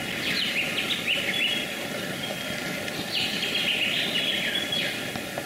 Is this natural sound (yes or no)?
yes